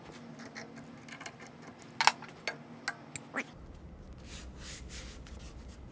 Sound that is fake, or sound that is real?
real